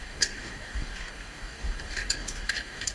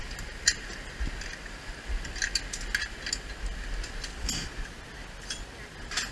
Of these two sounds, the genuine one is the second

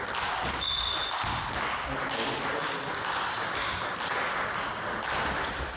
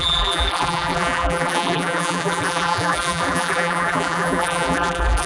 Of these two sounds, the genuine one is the first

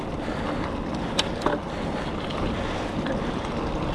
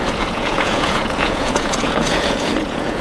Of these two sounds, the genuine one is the first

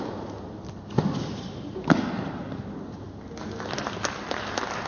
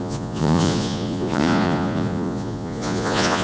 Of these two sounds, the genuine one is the first